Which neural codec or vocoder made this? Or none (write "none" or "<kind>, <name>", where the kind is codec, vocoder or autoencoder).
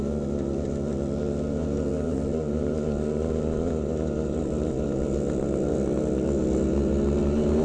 none